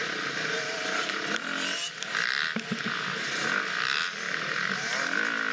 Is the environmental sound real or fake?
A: real